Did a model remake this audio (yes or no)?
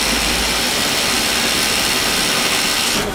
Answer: no